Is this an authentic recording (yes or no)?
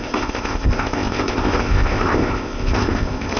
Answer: no